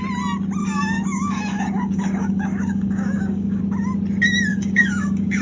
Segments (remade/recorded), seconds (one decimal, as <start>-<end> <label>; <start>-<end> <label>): 0.0-0.6 recorded; 0.6-3.6 remade; 3.6-4.5 recorded; 4.5-5.4 remade